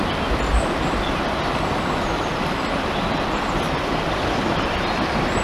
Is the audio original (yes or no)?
yes